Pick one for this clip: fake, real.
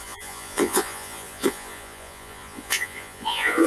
fake